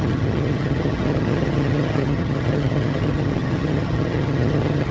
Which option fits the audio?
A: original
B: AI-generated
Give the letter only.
B